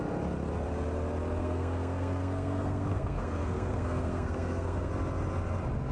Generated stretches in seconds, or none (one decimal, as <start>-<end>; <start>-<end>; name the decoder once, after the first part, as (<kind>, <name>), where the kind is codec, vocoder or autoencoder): 1.4-4.9 (codec, SNAC)